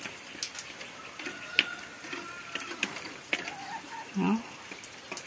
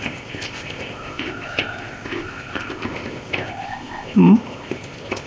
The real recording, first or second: first